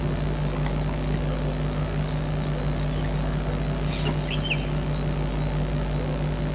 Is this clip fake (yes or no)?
no